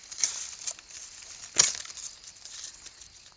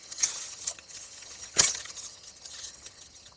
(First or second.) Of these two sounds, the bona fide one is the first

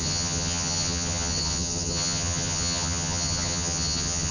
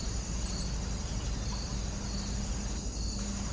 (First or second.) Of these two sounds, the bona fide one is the second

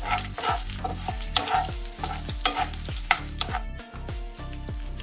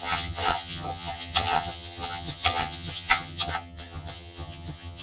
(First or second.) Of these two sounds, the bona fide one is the first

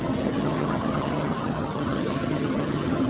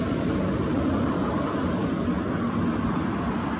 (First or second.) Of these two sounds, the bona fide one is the second